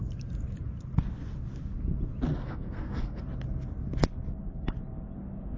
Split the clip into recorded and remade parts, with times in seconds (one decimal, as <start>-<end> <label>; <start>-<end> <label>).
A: 0.0-2.3 recorded; 2.3-3.2 remade; 3.2-5.6 recorded